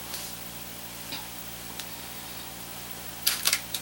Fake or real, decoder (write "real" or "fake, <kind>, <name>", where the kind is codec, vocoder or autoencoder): fake, vocoder, BigVGAN v2